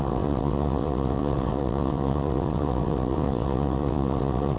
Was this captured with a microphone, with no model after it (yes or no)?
no